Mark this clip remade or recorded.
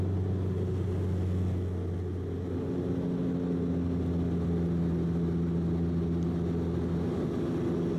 recorded